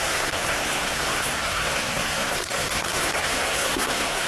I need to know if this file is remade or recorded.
remade